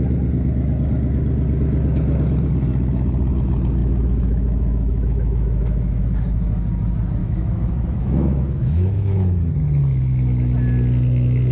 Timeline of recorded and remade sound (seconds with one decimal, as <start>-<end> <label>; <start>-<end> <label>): 0.0-3.8 recorded; 3.8-6.0 remade; 6.0-7.2 recorded; 7.2-9.5 remade; 9.5-11.5 recorded